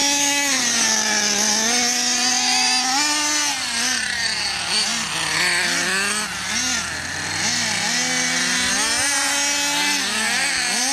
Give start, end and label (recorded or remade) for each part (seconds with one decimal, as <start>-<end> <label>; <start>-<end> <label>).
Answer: 0.0-0.6 remade; 0.6-10.9 recorded